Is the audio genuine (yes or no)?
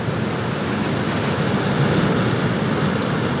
yes